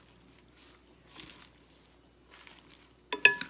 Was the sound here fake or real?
real